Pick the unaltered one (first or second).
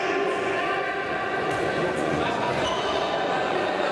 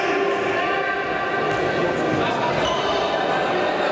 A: second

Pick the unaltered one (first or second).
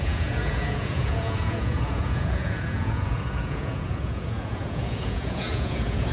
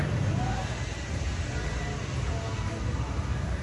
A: second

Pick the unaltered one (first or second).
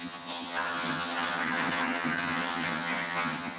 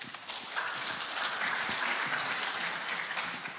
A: second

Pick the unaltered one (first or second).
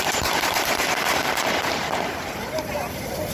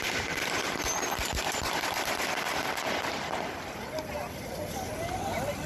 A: second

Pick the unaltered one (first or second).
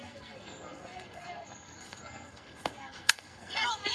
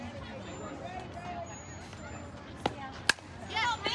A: second